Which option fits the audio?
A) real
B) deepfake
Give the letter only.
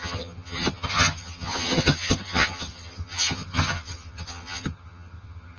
B